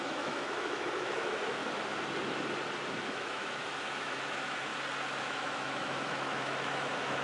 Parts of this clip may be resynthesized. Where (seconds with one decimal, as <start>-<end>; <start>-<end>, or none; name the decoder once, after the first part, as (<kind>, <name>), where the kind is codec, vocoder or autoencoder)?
0.0-1.6 (autoencoder, DAC-VAE); 3.0-4.7; 5.2-7.2